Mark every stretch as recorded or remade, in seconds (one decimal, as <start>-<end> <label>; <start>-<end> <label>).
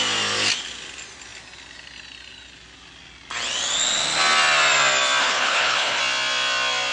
0.0-5.2 recorded; 5.2-6.0 remade; 6.0-6.9 recorded